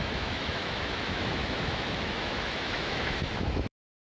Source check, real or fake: fake